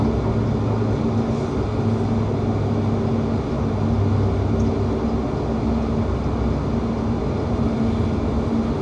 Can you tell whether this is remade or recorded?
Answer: recorded